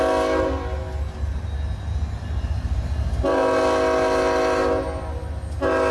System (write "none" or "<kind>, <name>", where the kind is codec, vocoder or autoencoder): none